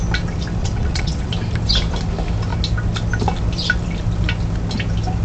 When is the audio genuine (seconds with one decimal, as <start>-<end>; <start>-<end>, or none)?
0.0-0.6; 1.3-5.2